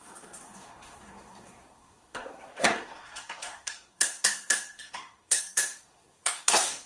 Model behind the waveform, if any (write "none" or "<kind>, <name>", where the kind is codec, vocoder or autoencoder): codec, SNAC